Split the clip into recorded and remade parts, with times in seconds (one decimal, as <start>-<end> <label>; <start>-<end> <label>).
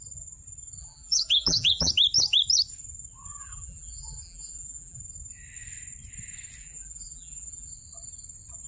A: 0.0-0.8 recorded; 0.8-1.9 remade; 1.9-3.4 recorded; 3.4-5.0 remade; 5.0-6.6 recorded; 6.6-7.7 remade; 7.7-8.7 recorded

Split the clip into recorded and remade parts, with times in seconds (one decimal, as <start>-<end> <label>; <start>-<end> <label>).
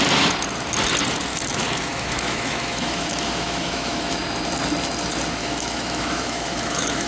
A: 0.0-1.3 recorded; 1.3-4.2 remade; 4.2-5.4 recorded; 5.4-7.1 remade